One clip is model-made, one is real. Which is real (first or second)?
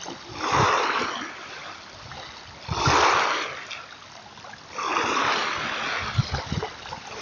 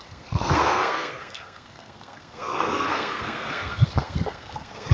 first